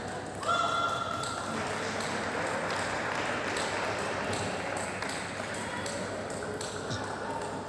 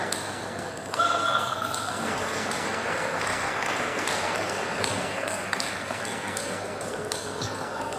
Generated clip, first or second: second